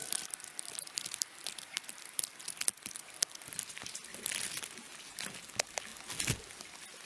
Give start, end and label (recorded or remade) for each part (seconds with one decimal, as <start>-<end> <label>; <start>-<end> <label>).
0.0-7.1 recorded